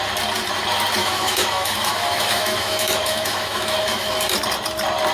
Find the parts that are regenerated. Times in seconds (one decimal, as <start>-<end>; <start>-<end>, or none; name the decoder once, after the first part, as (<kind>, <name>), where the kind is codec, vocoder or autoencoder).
1.0-4.1 (autoencoder, DAC-VAE)